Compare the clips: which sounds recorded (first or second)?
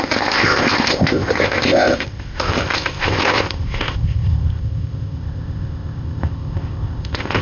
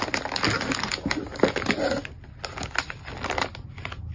second